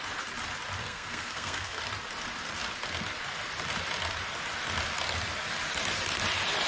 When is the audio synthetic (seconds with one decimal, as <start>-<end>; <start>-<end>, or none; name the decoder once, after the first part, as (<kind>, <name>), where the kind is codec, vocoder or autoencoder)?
0.8-1.8 (codec, SNAC)